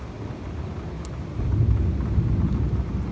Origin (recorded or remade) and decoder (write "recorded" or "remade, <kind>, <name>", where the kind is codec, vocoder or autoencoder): recorded